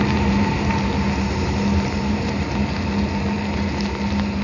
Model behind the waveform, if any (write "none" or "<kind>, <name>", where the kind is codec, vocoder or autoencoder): none